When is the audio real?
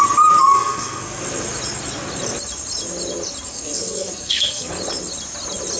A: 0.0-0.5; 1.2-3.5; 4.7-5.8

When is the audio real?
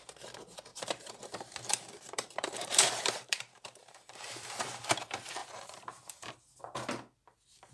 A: 0.0-0.7; 4.9-5.4; 6.6-7.7